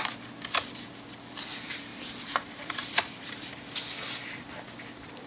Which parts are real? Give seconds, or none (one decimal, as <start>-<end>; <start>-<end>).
0.0-1.9; 3.5-5.3